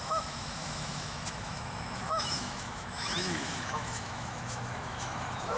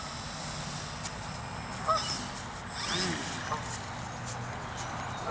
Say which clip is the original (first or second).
second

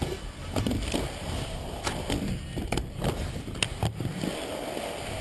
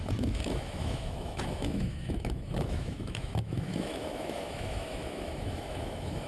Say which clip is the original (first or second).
first